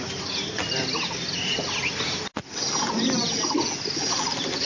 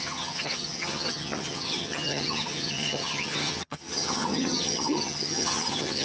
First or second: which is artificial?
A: second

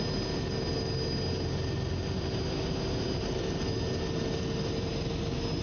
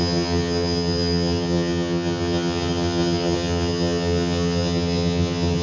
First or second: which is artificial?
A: second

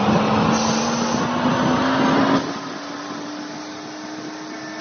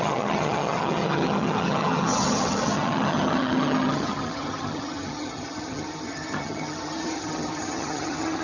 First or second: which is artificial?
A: second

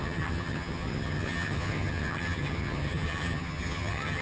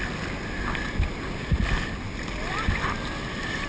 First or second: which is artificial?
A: first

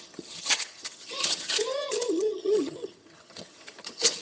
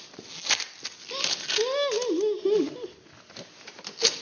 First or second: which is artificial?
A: first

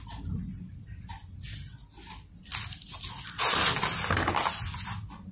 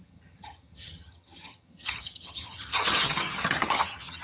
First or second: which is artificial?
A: second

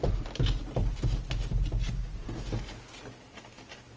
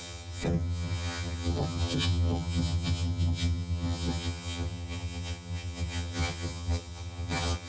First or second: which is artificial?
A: second